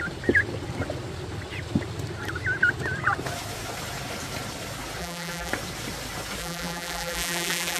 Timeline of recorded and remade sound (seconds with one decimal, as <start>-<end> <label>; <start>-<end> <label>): 0.0-5.0 recorded; 5.0-5.5 remade; 5.5-6.4 recorded; 6.4-7.8 remade